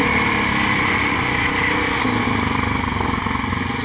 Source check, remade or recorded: recorded